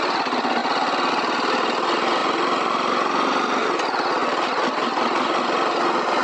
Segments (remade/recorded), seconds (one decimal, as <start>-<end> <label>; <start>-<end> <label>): 0.0-6.2 recorded